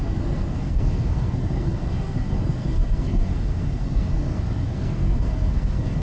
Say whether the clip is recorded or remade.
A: remade